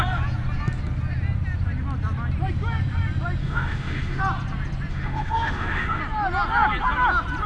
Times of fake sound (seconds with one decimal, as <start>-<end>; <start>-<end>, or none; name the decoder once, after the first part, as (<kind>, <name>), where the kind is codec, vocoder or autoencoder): 3.4-4.2 (autoencoder, DAC-VAE); 4.9-6.0